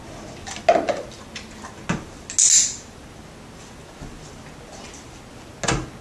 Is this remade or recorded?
recorded